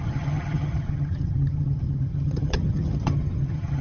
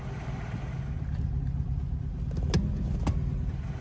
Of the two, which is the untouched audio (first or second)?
second